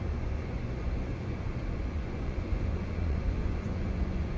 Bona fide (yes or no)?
no